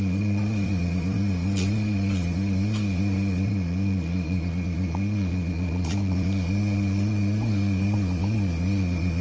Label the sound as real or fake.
fake